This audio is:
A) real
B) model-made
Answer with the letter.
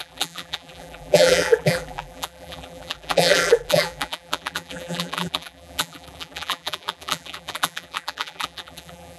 B